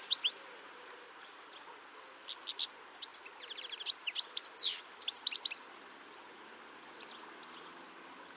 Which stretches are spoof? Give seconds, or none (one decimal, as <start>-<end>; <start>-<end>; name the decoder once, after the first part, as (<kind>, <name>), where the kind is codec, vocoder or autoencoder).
none